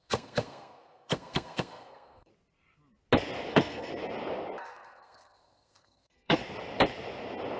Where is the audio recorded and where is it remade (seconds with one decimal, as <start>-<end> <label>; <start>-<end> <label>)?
0.0-2.3 remade; 2.3-3.5 recorded; 3.5-3.9 remade; 3.9-4.6 recorded; 4.6-6.4 remade; 6.4-7.6 recorded